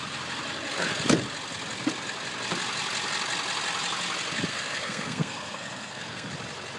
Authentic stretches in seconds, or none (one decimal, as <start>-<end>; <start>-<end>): 0.0-4.5; 6.3-6.8